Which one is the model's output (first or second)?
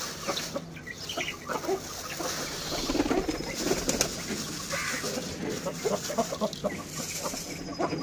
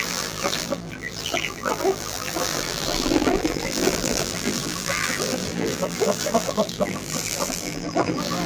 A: second